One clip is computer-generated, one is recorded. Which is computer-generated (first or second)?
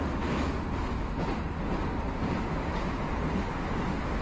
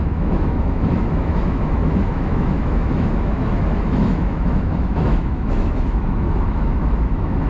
second